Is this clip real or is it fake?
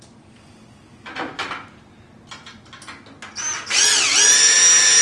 real